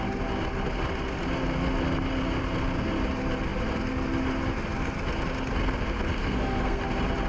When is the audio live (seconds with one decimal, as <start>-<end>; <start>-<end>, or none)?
0.0-6.2; 6.8-7.3